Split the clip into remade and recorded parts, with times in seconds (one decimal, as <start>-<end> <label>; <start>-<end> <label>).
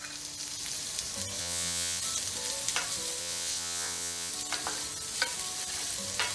0.0-1.4 recorded; 1.4-2.0 remade; 2.0-3.2 recorded; 3.2-4.3 remade; 4.3-6.3 recorded